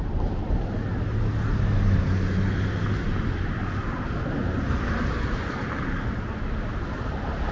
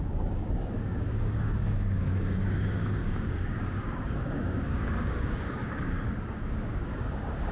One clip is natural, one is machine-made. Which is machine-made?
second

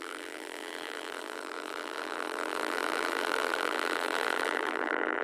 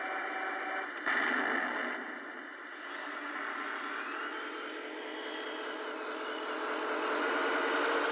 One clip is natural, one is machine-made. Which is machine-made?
first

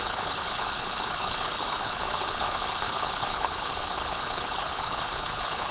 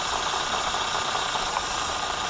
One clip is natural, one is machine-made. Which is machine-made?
first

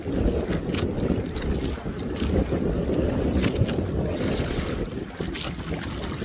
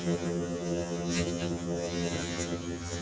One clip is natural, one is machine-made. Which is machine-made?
second